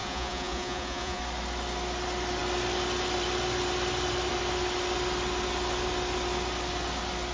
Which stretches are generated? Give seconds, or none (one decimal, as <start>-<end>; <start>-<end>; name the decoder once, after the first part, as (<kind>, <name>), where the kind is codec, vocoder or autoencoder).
0.0-1.2 (vocoder, Vocos)